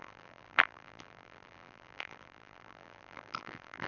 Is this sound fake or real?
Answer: fake